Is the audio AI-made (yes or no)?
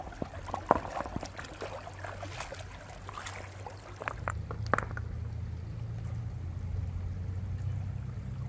no